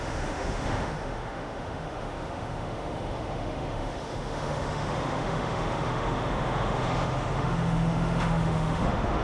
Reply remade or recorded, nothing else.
remade